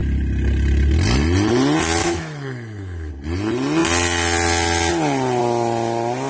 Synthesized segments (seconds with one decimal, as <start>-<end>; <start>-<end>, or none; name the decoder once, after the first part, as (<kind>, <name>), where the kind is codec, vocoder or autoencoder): 2.0-3.1 (autoencoder, DAC-VAE)